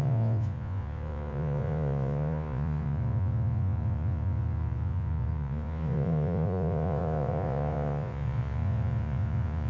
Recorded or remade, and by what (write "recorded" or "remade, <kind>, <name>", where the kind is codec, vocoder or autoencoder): remade, vocoder, Vocos